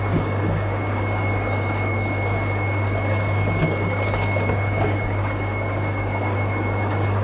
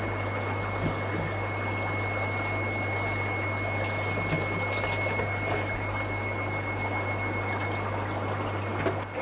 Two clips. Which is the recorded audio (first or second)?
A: second